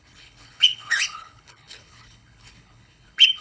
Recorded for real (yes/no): no